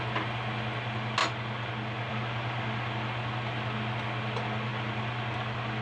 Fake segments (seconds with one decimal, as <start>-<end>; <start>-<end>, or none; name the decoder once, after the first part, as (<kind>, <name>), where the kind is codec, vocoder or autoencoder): none